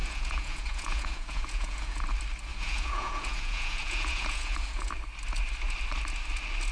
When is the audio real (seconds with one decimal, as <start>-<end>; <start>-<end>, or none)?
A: 2.0-2.5; 4.9-6.7